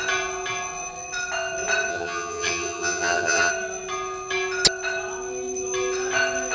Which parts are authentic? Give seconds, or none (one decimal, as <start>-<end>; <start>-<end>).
0.0-1.9; 3.5-6.5